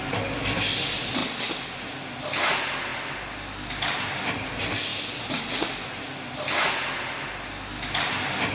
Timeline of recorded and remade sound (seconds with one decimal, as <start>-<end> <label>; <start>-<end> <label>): 0.0-8.5 recorded